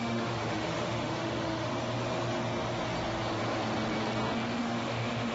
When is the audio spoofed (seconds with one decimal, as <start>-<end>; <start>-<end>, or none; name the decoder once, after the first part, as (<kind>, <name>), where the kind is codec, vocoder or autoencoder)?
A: 0.0-1.7 (autoencoder, DAC-VAE); 4.6-5.3